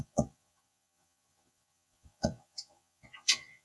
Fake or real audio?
fake